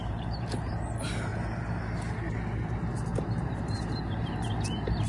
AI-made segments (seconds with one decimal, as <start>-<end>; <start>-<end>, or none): 0.0-0.7; 3.1-4.4